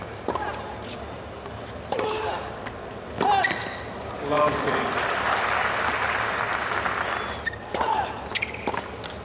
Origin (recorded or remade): recorded